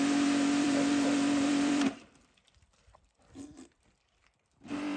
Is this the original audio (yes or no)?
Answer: no